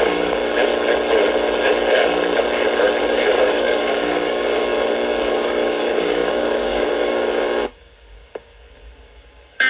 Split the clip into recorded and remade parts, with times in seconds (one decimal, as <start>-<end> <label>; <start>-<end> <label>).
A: 0.0-0.7 remade; 0.7-3.0 recorded; 3.0-9.7 remade